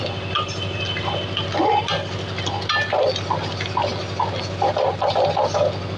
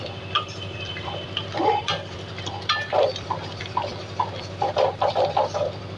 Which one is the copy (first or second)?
second